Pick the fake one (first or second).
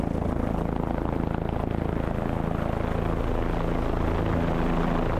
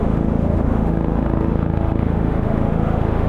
second